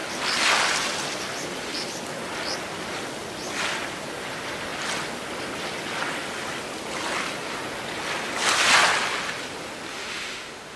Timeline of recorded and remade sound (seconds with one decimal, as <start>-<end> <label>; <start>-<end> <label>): 0.0-9.9 recorded; 9.9-10.8 remade